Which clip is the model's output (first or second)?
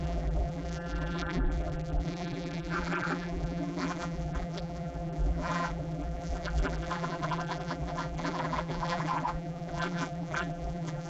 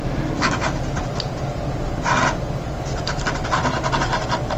first